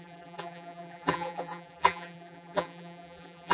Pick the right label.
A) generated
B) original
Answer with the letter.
A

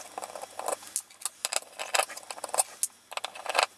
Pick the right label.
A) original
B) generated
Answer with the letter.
A